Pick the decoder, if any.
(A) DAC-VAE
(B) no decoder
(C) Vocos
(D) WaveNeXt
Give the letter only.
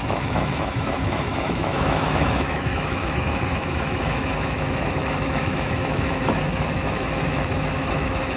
A